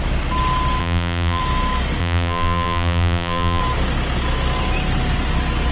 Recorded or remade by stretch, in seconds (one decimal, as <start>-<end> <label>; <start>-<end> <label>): 0.0-0.8 recorded; 0.8-1.4 remade; 1.4-2.0 recorded; 2.0-3.6 remade; 3.6-5.7 recorded